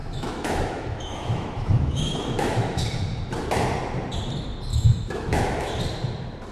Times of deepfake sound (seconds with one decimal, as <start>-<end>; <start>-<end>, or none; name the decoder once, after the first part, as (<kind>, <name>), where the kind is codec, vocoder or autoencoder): 0.0-2.8 (autoencoder, DAC-VAE); 4.7-5.7